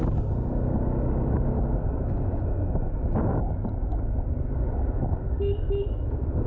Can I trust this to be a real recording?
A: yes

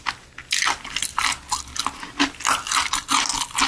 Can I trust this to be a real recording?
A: yes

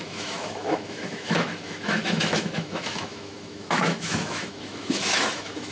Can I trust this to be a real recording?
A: no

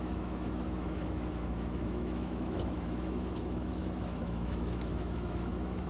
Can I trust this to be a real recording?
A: no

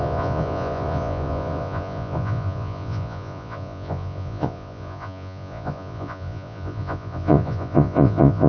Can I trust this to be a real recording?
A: no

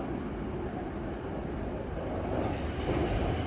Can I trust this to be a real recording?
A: yes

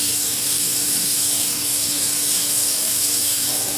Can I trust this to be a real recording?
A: no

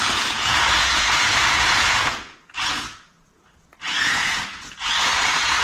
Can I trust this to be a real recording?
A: no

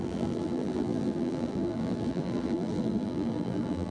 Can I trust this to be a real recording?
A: no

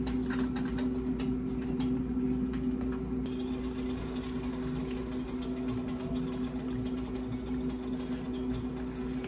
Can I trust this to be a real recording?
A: yes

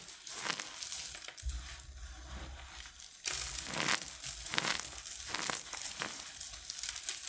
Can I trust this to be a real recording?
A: yes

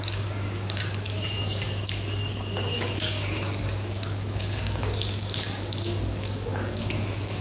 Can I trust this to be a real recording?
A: no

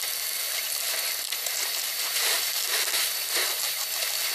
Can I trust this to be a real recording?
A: yes